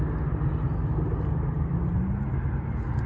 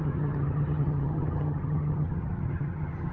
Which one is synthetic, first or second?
second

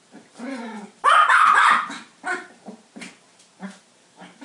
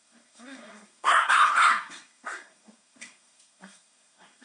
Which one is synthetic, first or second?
second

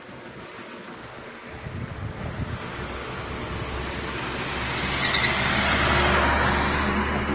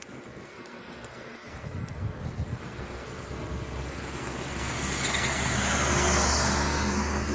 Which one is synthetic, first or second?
second